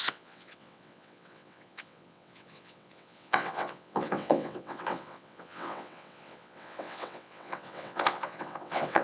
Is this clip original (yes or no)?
no